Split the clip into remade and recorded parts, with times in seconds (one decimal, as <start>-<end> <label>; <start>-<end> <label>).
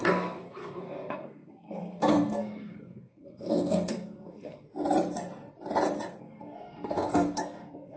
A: 0.0-4.7 remade; 4.7-6.2 recorded; 6.2-8.0 remade